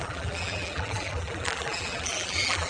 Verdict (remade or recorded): remade